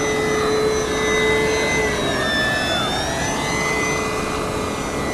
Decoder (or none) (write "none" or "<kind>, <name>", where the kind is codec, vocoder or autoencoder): none